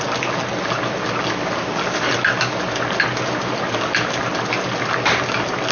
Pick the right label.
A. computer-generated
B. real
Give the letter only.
B